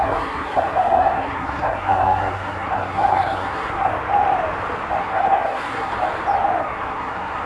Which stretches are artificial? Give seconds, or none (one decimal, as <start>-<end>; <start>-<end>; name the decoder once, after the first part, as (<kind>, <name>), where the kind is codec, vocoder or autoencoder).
0.0-3.9 (codec, SNAC); 5.0-5.9; 6.6-7.5